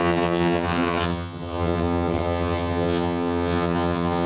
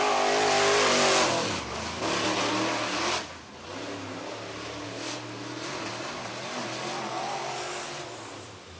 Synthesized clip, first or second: first